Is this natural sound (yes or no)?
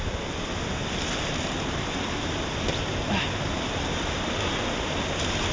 yes